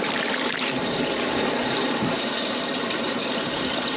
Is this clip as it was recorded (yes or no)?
no